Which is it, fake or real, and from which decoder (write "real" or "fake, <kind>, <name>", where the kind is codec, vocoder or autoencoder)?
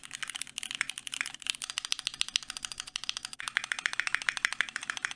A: real